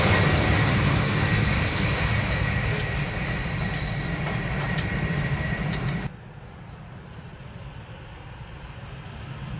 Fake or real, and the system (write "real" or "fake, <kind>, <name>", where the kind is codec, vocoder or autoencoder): real